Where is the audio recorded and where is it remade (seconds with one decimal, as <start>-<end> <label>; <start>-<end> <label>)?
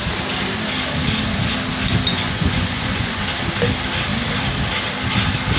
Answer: 0.0-2.1 recorded; 2.1-3.2 remade; 3.2-5.6 recorded